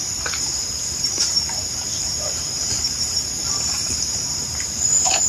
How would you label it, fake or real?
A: fake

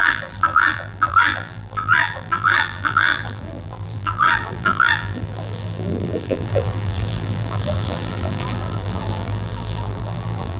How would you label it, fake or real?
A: fake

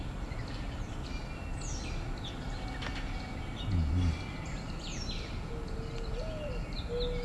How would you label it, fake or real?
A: real